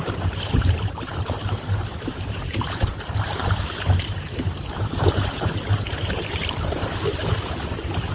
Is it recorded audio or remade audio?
remade